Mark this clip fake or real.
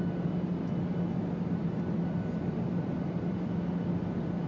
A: real